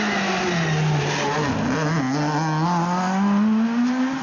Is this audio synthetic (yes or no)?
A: no